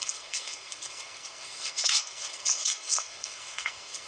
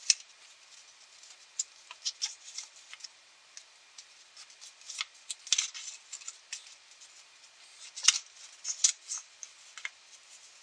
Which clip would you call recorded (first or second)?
second